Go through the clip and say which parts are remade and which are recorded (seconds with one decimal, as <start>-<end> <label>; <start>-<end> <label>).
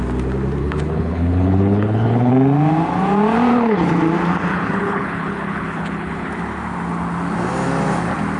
0.0-0.6 recorded; 0.6-2.3 remade; 2.3-3.5 recorded; 3.5-4.0 remade; 4.0-4.5 recorded; 4.5-6.3 remade; 6.3-8.4 recorded